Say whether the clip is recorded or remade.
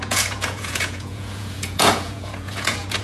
remade